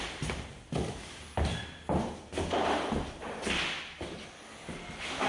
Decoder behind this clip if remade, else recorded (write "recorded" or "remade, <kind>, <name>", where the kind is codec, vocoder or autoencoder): recorded